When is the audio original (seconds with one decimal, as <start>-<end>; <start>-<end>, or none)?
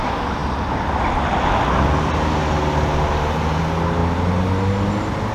0.0-5.3